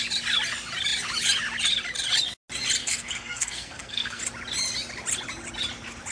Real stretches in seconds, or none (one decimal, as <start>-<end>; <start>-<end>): 0.0-2.8; 4.2-6.1